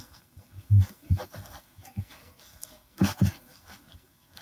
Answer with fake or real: fake